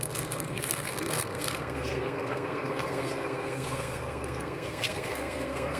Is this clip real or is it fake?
fake